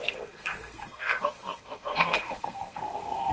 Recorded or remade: remade